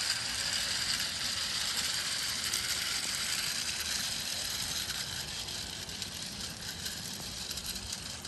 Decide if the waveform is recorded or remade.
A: remade